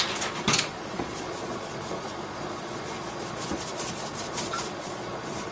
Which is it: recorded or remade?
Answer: remade